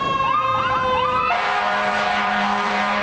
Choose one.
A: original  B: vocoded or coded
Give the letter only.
B